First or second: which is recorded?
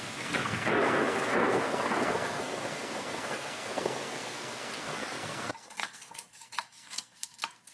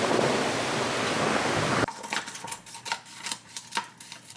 second